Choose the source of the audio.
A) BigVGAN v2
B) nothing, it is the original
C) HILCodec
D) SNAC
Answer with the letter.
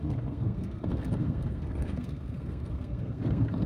D